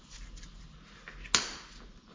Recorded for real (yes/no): yes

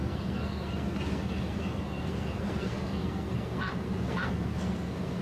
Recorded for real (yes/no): no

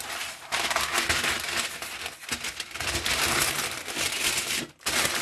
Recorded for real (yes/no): yes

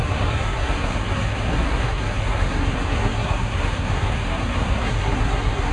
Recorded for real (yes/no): no